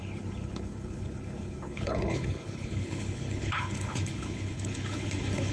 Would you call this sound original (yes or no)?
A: no